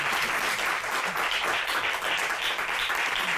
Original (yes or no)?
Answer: no